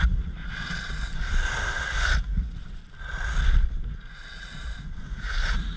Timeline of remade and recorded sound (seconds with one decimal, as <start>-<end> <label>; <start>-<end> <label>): 0.0-0.4 remade; 0.4-2.2 recorded; 2.2-2.8 remade; 2.8-5.0 recorded; 5.0-5.8 remade